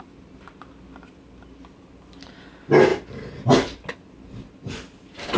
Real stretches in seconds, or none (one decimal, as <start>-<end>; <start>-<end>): 0.0-5.4